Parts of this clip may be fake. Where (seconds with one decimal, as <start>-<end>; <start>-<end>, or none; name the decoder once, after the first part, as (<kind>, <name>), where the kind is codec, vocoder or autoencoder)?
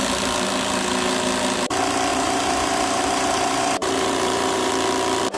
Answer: 2.1-4.7 (vocoder, BigVGAN v2)